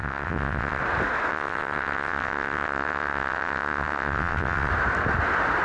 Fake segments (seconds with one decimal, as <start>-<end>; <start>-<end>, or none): 0.0-0.8; 1.3-4.7